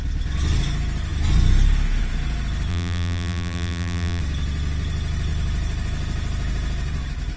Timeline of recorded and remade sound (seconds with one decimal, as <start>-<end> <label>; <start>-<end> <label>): 0.0-2.7 recorded; 2.7-4.2 remade; 4.2-7.4 recorded